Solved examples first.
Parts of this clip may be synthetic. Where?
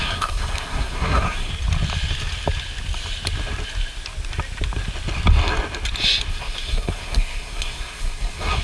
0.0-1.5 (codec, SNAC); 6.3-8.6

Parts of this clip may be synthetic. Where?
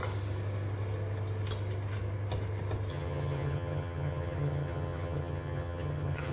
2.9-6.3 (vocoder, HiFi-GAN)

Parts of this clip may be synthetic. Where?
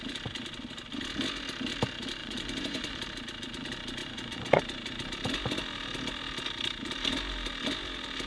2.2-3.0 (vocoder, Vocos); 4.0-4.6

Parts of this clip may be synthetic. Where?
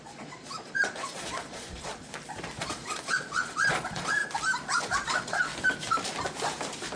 0.0-1.9 (vocoder, Vocos); 2.6-4.2; 4.8-5.5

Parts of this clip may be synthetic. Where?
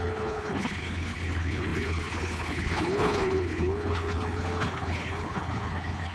0.0-6.1 (codec, HILCodec)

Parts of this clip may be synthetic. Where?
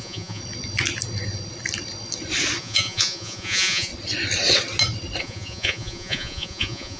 0.0-0.4 (vocoder, Vocos); 2.6-3.9; 5.2-7.0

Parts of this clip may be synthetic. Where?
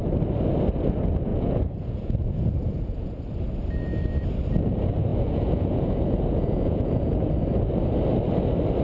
1.3-3.2 (vocoder, Vocos); 5.1-7.3